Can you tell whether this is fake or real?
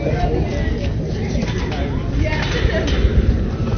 real